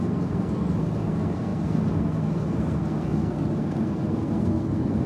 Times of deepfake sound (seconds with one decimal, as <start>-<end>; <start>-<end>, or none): 0.0-5.1